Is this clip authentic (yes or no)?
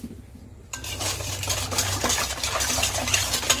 yes